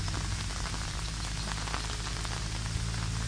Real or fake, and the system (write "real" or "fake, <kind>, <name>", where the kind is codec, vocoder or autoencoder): real